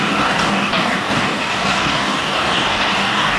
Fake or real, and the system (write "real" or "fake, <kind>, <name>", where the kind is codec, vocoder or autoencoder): fake, codec, DAC